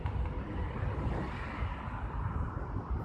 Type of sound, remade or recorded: recorded